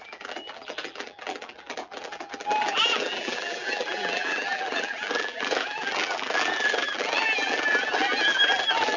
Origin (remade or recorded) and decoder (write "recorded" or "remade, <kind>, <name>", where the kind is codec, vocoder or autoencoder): remade, vocoder, BigVGAN v2